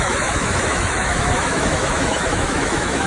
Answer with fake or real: fake